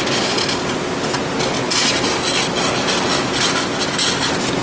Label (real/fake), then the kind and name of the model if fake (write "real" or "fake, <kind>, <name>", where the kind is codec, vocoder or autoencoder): real